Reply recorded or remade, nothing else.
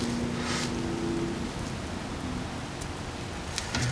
recorded